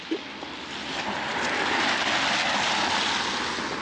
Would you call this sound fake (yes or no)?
no